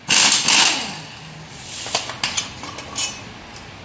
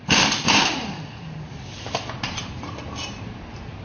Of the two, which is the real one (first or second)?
first